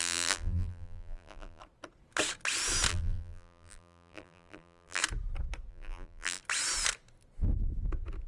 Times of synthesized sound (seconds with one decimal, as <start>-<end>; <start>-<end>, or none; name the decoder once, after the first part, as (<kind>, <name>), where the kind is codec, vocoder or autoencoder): 0.0-1.6 (vocoder, BigVGAN v2); 2.9-5.0; 5.7-6.4